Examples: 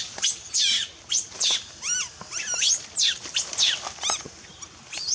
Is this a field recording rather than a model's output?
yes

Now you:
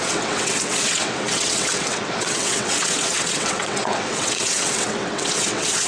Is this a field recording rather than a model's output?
no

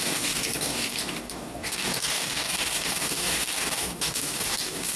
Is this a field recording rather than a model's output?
no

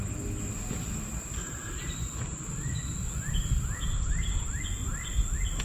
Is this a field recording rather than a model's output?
yes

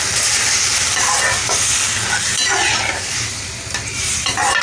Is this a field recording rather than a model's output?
yes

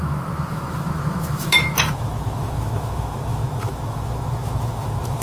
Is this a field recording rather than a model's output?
no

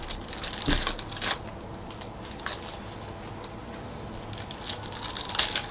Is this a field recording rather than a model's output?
yes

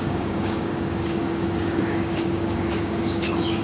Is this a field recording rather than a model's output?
no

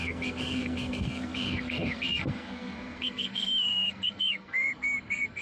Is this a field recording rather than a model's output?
no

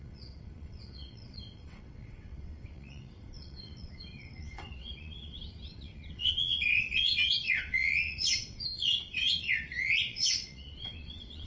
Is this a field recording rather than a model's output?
no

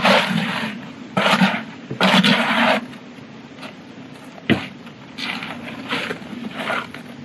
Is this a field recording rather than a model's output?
yes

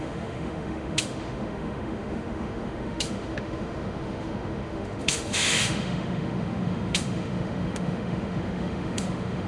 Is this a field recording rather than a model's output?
no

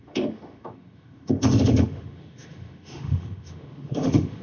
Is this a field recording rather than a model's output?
no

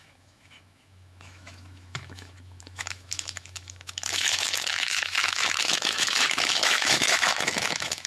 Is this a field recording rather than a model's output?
no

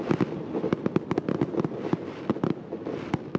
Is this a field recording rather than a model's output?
yes